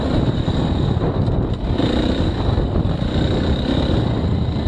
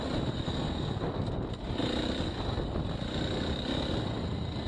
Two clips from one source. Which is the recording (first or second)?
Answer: second